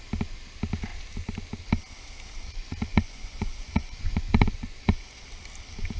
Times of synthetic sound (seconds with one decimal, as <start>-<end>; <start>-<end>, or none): 2.6-5.2